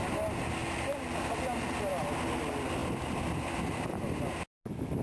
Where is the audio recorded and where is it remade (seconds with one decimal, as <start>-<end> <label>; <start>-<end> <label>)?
0.0-0.6 recorded; 0.6-1.6 remade; 1.6-2.8 recorded; 2.8-3.6 remade; 3.6-5.0 recorded